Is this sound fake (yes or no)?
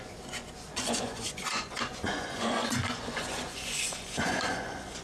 yes